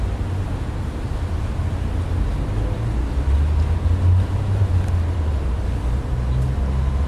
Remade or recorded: recorded